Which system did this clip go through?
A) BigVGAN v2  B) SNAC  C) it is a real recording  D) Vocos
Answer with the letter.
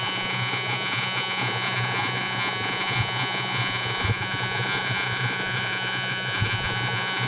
D